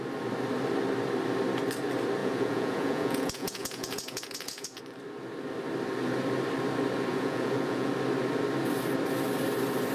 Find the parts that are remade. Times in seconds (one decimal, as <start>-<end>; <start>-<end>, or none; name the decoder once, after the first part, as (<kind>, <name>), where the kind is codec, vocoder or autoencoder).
2.2-4.8 (vocoder, Vocos); 7.1-7.9